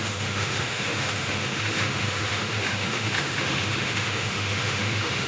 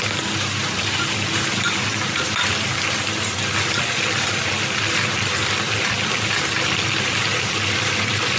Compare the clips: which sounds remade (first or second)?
first